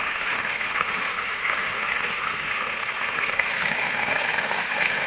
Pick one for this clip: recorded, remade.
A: remade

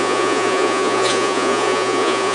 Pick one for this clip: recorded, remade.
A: remade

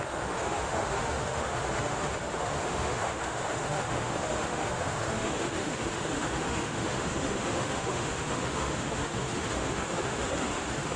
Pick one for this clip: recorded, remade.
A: remade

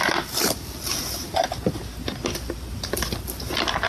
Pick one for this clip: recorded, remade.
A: recorded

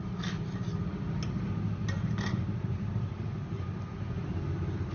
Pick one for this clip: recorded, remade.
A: recorded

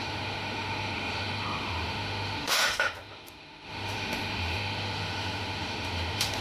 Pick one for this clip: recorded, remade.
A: remade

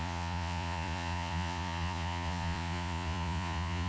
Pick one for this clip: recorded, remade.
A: remade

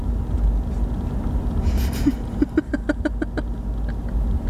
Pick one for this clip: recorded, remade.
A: recorded